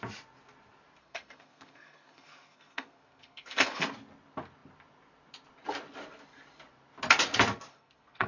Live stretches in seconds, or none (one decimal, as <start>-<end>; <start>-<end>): 0.0-1.0; 3.9-7.7